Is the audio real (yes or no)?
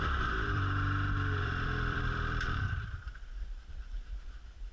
no